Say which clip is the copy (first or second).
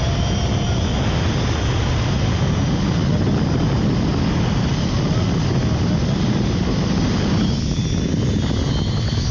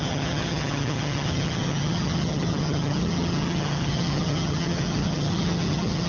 second